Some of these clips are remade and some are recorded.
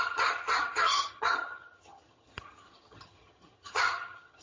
remade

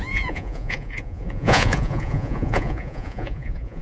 remade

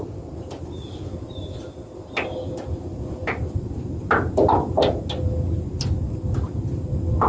recorded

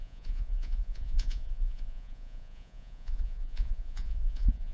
remade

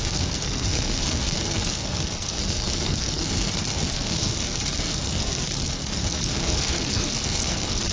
remade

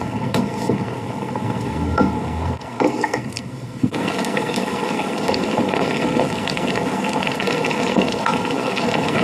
remade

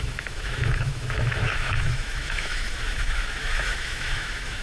remade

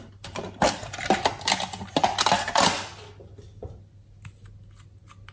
recorded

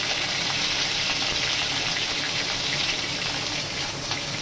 remade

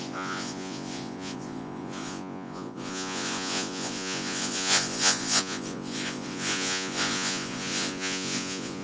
remade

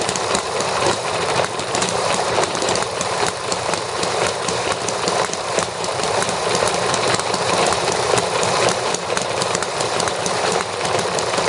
remade